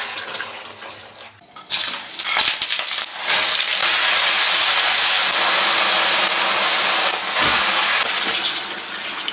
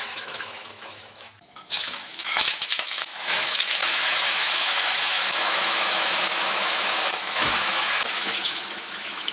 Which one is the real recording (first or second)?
first